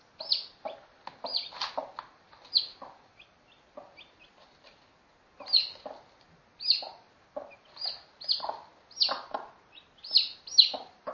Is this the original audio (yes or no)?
yes